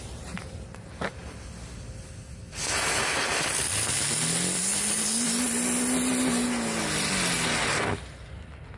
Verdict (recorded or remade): recorded